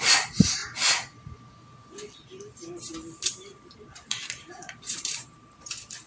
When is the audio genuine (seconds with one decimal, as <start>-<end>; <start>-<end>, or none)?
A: 0.6-2.7